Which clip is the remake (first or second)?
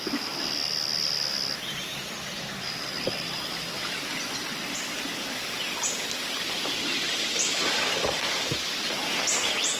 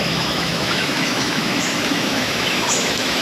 second